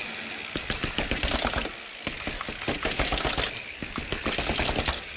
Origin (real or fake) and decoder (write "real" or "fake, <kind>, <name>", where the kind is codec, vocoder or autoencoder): real